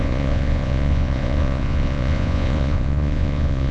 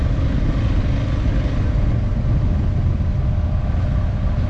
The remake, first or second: first